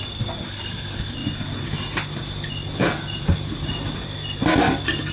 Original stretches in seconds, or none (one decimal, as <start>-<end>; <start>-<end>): 0.0-5.1

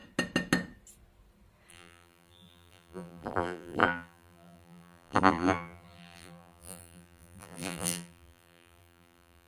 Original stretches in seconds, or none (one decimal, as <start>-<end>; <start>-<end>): 0.0-1.7

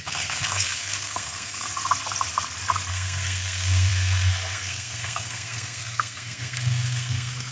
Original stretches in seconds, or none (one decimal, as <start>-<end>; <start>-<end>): 1.7-2.9

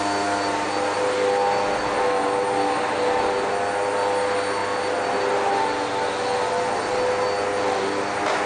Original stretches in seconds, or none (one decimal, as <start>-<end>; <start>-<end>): 0.0-8.5